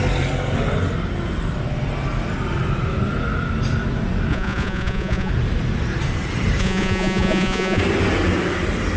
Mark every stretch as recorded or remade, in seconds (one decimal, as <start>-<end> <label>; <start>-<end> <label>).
0.0-4.3 recorded; 4.3-5.3 remade; 5.3-6.6 recorded; 6.6-7.8 remade; 7.8-9.0 recorded